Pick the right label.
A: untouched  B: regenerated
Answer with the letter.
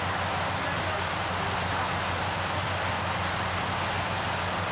A